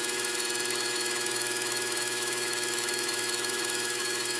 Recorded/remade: remade